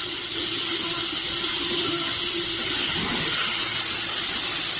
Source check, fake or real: real